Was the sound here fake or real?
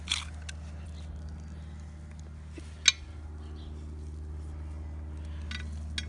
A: real